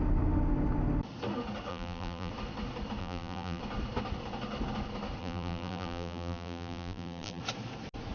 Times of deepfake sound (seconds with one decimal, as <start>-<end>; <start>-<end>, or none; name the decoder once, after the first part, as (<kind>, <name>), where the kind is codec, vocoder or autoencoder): 1.7-2.3 (vocoder, BigVGAN v2); 3.0-3.6; 5.2-7.4